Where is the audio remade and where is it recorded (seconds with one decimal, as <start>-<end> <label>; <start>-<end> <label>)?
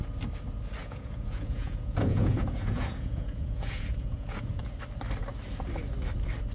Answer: 0.0-0.8 recorded; 0.8-4.7 remade; 4.7-6.5 recorded